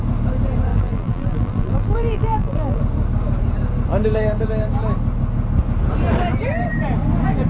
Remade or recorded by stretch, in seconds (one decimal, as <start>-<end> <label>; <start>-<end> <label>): 0.0-0.7 recorded; 0.7-2.8 remade; 2.8-7.5 recorded